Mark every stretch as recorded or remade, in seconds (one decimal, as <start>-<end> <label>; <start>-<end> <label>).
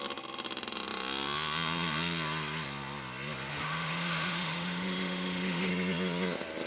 0.0-3.5 recorded; 3.5-5.7 remade; 5.7-6.7 recorded